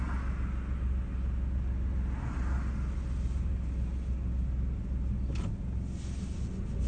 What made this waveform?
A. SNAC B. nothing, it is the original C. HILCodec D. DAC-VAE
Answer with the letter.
B